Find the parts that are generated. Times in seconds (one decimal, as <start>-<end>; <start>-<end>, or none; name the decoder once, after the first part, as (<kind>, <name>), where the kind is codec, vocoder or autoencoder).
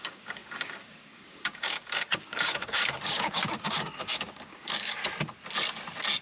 0.0-5.0 (codec, DAC)